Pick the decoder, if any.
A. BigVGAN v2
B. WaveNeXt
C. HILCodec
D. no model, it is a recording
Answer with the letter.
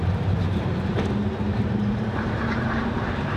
A